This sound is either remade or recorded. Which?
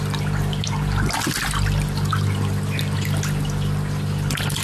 recorded